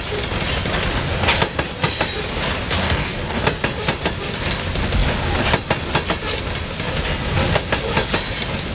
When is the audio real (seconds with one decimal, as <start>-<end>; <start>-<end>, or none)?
0.0-2.8; 3.4-8.7

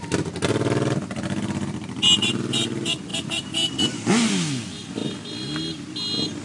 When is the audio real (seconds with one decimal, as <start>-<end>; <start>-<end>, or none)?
0.0-3.1; 4.1-6.4

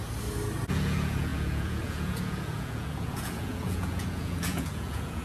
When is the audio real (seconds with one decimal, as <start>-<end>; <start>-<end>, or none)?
0.0-0.7

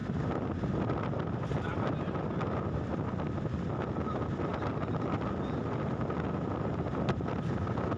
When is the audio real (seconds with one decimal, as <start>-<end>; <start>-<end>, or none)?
0.0-8.0

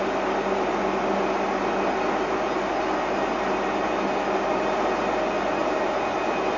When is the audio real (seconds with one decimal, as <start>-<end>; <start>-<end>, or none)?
0.0-6.6

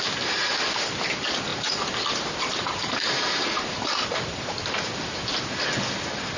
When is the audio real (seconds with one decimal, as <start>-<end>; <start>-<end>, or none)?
0.0-1.5; 4.5-6.4

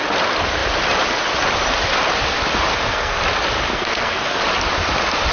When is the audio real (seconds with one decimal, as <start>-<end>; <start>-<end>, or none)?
0.0-2.7; 3.2-3.7; 4.4-5.3

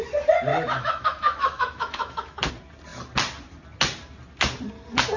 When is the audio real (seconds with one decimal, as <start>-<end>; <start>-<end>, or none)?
0.0-0.5; 2.5-5.2